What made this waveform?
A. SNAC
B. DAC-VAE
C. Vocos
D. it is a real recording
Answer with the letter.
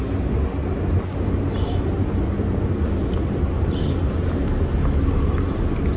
D